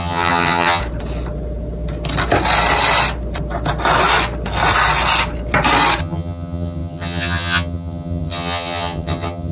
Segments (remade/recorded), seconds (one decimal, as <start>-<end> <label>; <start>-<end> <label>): 0.0-0.8 remade; 0.8-6.0 recorded; 6.0-9.5 remade